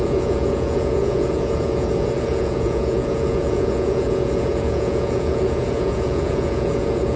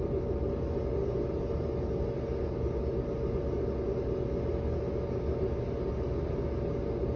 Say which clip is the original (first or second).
second